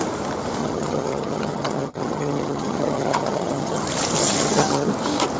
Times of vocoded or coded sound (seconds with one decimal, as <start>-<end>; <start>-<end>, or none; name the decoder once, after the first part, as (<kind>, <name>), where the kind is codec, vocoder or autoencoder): 0.6-3.8 (vocoder, HiFi-GAN); 4.2-4.9